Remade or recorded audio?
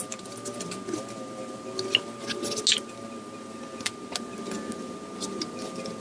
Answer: recorded